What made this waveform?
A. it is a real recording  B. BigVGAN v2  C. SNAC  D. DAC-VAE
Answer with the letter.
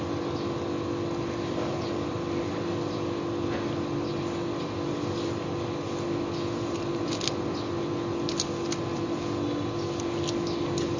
A